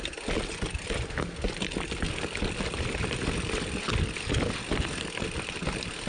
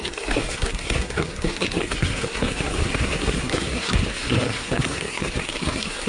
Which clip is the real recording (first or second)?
first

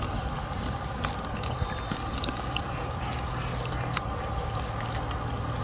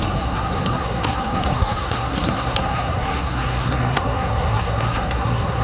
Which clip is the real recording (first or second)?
first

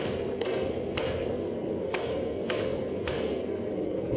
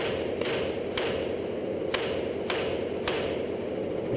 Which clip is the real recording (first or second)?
second